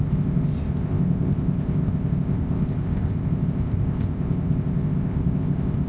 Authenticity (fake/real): fake